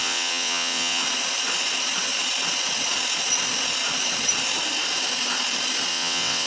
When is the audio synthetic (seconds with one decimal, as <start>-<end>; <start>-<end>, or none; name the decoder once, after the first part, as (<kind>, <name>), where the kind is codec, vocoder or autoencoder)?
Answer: 0.0-1.0 (vocoder, WaveNeXt); 5.9-6.5